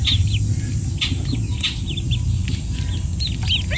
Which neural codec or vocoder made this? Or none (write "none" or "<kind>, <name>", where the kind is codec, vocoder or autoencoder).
none